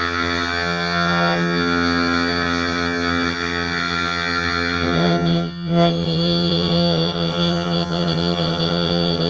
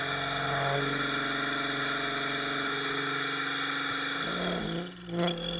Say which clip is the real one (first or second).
second